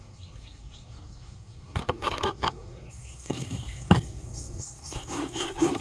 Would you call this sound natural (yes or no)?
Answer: no